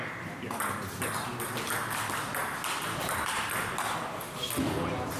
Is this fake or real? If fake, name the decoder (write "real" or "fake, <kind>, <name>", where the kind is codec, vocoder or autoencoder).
real